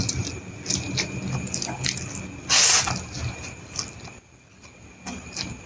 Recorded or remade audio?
recorded